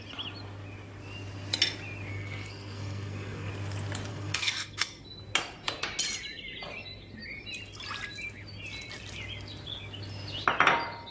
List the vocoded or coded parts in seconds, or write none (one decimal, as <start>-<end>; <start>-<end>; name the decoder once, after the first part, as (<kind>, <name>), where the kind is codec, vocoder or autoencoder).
2.1-3.5 (codec, SNAC); 4.1-5.0